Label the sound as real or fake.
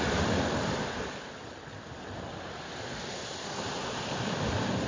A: real